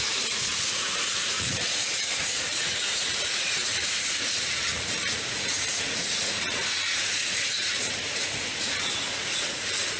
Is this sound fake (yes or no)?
yes